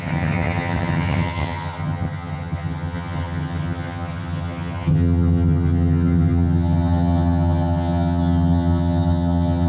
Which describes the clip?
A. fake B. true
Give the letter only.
A